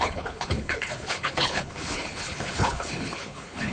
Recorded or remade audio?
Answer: remade